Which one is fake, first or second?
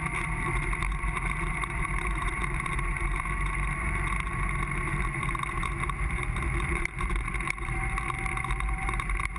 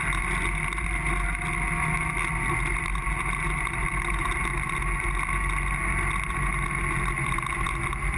first